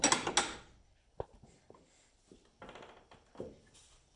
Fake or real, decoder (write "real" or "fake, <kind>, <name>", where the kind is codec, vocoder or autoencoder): real